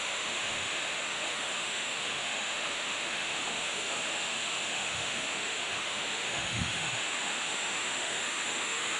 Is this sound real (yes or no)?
no